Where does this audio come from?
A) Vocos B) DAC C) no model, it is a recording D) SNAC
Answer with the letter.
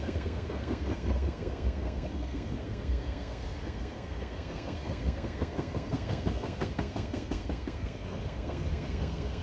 D